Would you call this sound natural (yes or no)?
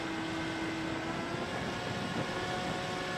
yes